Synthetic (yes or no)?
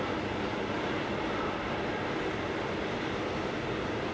no